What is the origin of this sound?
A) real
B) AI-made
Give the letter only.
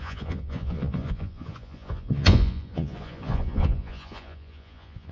B